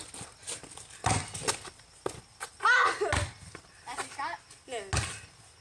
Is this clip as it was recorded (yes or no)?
yes